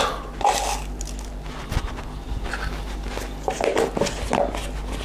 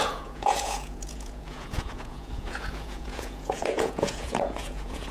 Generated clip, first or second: second